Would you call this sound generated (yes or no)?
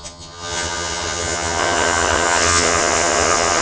yes